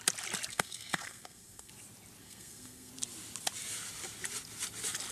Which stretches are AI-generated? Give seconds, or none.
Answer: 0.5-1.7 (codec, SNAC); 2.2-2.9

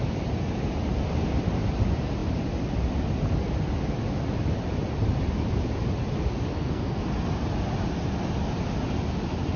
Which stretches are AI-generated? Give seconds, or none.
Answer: 6.5-7.0 (codec, SNAC)

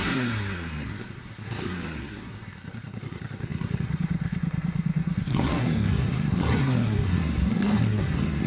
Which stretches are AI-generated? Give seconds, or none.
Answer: 0.0-8.5 (codec, SNAC)